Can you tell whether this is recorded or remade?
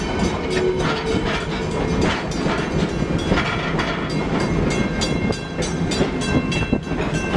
recorded